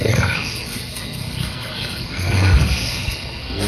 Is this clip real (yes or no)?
no